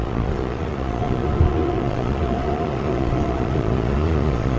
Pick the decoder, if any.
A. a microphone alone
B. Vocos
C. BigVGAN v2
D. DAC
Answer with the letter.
B